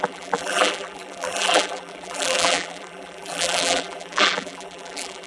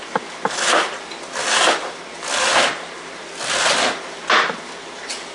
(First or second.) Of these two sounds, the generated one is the first